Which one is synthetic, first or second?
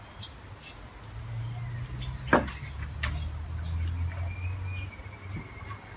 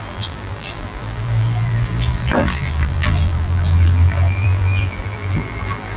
second